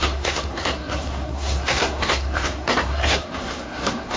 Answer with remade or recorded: remade